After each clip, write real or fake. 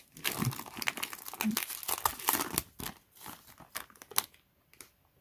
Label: real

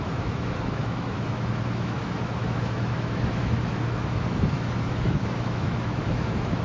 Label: fake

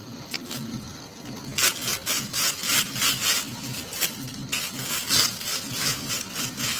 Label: real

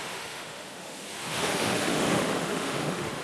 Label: fake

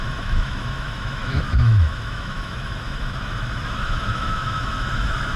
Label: fake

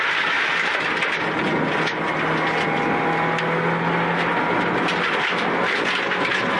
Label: real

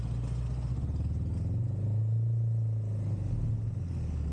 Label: real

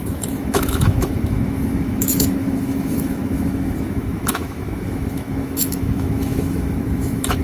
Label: fake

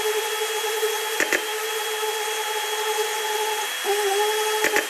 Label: real